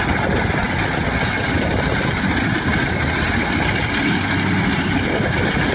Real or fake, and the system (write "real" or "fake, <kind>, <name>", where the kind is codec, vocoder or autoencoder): real